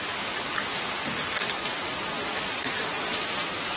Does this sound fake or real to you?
fake